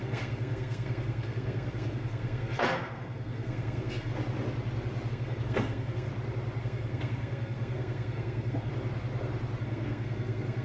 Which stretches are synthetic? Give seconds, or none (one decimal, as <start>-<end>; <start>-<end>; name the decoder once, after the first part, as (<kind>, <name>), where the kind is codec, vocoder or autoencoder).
0.0-4.1 (codec, SNAC); 5.1-6.1; 6.6-8.7; 9.6-10.6